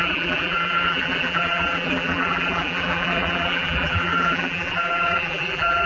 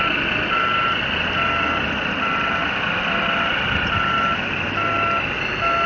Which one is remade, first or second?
first